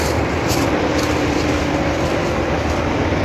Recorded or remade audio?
recorded